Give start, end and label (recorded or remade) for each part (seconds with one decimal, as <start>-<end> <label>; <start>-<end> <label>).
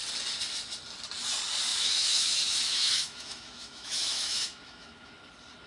0.0-1.7 recorded; 1.7-5.1 remade; 5.1-5.7 recorded